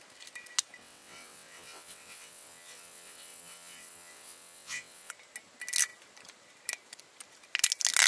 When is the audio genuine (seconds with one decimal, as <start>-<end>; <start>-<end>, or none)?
0.0-0.8; 5.1-8.1